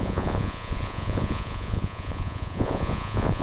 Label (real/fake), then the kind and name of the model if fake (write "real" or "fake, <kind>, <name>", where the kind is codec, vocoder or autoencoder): fake, vocoder, Vocos